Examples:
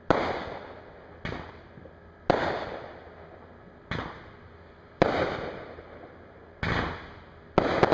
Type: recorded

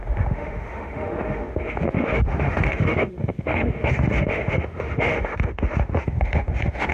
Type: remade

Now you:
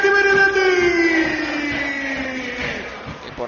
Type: recorded